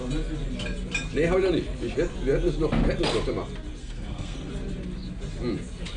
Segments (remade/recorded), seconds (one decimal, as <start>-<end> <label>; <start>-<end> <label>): 0.0-3.8 recorded; 3.8-4.5 remade; 4.5-6.0 recorded